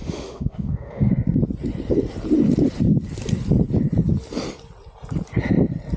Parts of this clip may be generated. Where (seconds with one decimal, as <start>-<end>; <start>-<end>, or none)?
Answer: 0.0-1.1